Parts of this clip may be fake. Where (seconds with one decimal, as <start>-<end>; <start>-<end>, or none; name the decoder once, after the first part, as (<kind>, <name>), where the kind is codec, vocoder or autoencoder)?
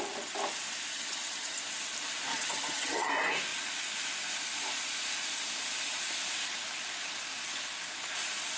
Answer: 0.9-1.6 (vocoder, HiFi-GAN); 2.3-3.1